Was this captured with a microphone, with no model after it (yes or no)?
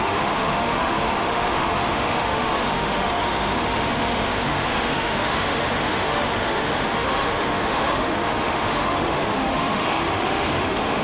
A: no